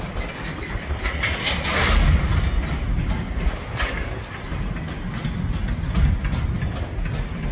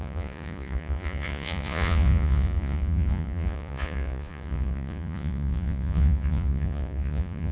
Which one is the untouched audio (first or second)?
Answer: first